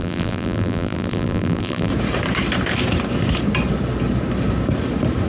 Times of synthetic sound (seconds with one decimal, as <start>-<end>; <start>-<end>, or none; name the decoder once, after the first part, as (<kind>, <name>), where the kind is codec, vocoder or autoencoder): 0.0-1.9 (vocoder, BigVGAN v2)